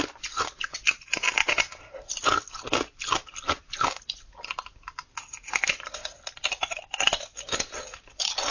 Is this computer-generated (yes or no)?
no